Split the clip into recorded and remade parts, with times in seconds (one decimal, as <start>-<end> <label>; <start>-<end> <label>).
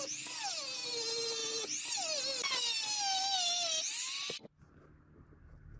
0.0-5.8 recorded